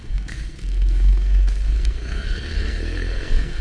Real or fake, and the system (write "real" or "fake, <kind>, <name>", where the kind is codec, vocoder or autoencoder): fake, codec, SNAC